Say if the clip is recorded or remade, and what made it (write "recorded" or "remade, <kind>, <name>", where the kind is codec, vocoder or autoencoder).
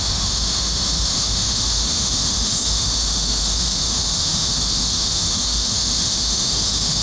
remade, autoencoder, DAC-VAE